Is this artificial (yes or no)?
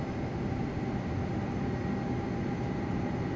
no